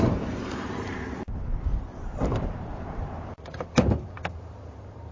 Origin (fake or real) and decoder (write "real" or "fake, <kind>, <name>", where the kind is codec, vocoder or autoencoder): fake, vocoder, BigVGAN v2